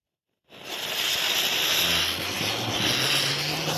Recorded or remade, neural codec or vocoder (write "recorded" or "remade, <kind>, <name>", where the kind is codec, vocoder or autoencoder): recorded